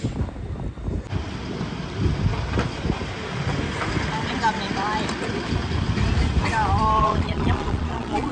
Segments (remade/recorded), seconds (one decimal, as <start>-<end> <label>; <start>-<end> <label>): 0.0-7.0 recorded; 7.0-8.3 remade